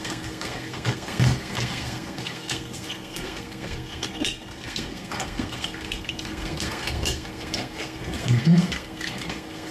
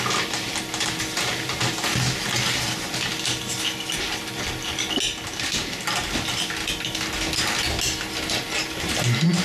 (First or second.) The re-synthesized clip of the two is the first